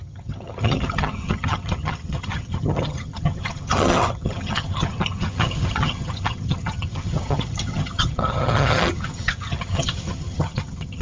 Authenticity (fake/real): fake